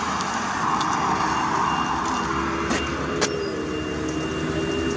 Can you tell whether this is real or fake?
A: real